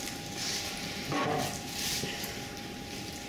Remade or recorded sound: recorded